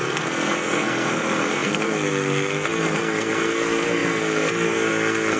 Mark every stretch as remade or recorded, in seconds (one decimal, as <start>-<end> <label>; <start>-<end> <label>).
0.0-5.4 remade